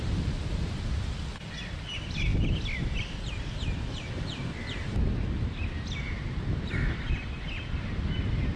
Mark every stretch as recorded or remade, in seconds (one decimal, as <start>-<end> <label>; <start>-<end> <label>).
0.0-2.3 remade; 2.3-6.7 recorded; 6.7-8.6 remade